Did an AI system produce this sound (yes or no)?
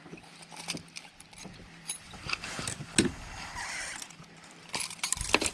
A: yes